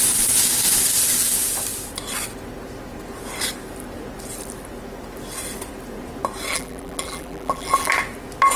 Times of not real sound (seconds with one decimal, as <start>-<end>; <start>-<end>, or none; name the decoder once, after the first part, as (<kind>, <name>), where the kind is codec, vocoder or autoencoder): 6.5-7.9 (vocoder, BigVGAN v2)